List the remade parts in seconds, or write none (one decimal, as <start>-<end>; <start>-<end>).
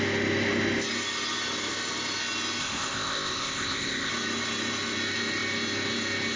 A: 2.6-4.1